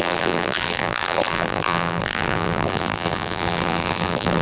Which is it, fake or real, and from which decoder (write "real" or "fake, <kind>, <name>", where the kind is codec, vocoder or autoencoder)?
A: fake, vocoder, BigVGAN v2